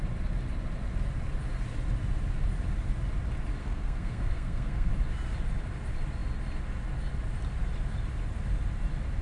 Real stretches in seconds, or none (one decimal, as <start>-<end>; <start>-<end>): 0.0-3.6; 4.9-9.2